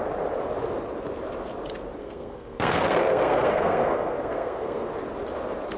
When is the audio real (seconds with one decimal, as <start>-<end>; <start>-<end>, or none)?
0.0-2.0; 4.9-5.8